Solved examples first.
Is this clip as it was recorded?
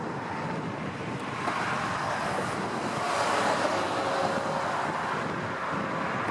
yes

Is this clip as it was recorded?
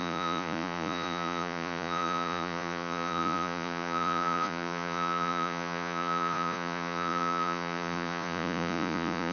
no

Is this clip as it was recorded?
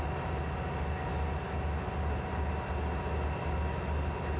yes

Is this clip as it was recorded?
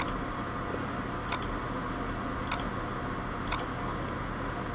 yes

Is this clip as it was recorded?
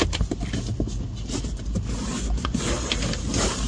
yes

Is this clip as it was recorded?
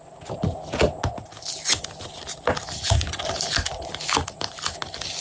yes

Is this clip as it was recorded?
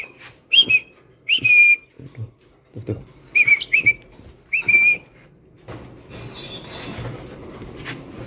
yes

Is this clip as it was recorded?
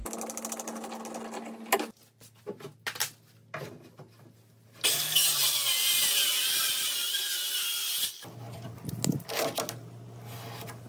yes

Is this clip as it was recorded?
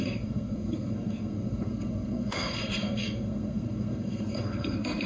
no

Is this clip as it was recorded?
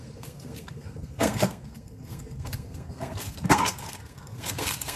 no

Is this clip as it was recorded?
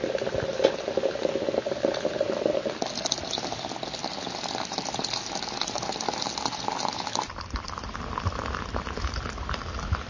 yes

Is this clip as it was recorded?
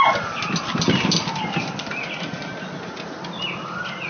yes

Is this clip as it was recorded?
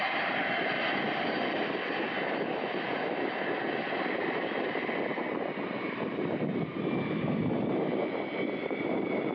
no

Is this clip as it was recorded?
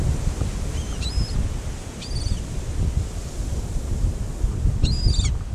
yes